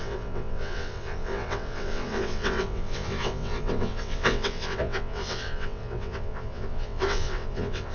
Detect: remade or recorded remade